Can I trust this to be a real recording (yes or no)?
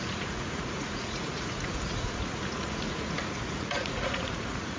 no